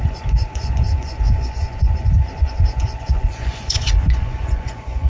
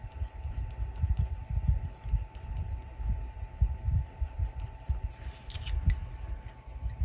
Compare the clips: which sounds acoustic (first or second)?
second